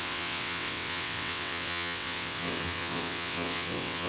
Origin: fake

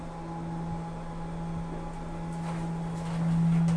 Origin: real